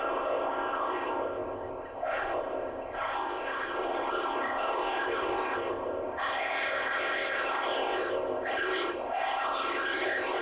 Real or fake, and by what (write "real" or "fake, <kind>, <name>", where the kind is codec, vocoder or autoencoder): fake, codec, ZipCodec